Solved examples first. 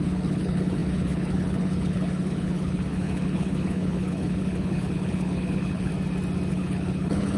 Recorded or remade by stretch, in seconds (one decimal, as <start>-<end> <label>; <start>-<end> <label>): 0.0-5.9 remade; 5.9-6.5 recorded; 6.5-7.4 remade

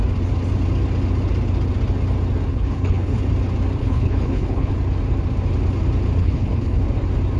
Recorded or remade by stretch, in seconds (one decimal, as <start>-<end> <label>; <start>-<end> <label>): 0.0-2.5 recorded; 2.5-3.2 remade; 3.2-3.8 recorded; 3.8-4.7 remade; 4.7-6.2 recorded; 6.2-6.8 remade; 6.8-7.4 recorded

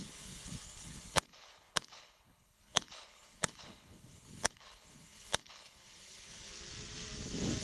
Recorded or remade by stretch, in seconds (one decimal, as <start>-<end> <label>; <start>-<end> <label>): 0.0-6.5 remade; 6.5-7.6 recorded

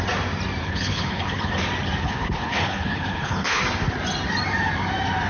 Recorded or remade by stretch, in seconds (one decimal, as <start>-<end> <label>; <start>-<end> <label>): 0.0-0.6 recorded; 0.6-1.5 remade; 1.5-2.0 recorded; 2.0-3.6 remade; 3.6-5.3 recorded